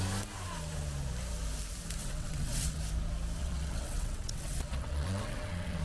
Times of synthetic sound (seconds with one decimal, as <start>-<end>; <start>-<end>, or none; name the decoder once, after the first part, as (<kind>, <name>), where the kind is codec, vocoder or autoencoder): 2.0-2.8 (vocoder, WaveNeXt); 3.4-5.8